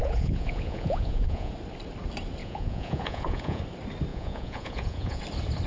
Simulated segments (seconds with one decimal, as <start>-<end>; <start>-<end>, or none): 0.0-1.5; 2.4-3.6; 4.1-5.2

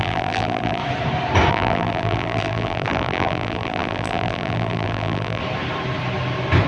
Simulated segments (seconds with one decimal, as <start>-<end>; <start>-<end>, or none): 0.0-0.8; 1.5-5.4

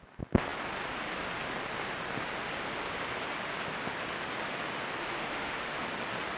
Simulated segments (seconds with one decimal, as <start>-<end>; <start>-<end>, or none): 5.0-5.8

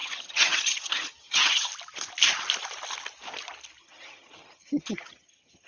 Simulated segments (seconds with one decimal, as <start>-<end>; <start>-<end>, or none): 0.0-1.7; 3.8-5.7

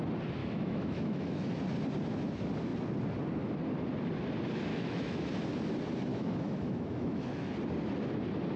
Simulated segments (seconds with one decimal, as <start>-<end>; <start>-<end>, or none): 0.4-1.5; 4.7-5.3; 6.1-7.5